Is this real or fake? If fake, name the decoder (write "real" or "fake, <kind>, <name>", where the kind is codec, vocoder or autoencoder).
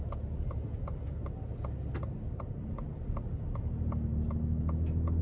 real